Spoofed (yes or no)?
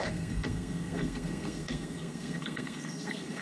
yes